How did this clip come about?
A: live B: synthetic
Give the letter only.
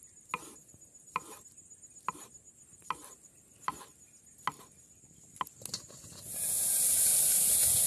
A